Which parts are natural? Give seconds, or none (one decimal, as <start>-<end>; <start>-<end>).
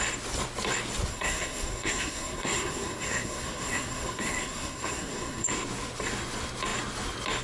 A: 0.0-1.1; 5.5-7.4